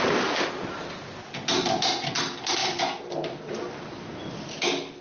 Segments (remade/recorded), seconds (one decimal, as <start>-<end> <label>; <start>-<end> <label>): 0.0-5.0 recorded